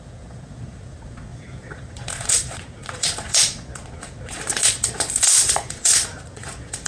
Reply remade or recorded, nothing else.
remade